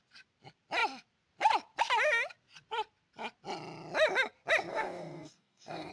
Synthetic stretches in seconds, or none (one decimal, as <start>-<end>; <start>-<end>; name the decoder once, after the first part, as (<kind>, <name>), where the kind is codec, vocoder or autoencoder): 4.7-5.9 (codec, DAC)